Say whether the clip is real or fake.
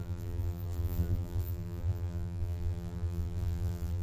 fake